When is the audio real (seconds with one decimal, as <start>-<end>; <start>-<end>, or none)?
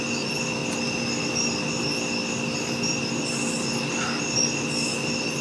0.0-5.4